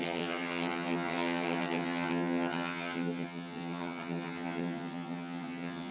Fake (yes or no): yes